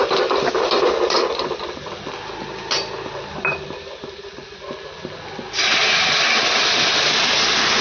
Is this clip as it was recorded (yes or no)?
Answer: yes